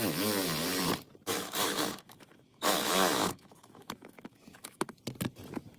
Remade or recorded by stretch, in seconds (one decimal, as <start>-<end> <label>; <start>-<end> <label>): 0.0-1.3 recorded; 1.3-4.8 remade; 4.8-5.8 recorded